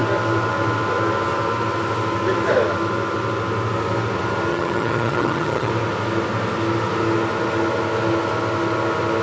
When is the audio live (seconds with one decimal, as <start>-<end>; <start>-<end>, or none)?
0.0-4.5; 5.7-9.2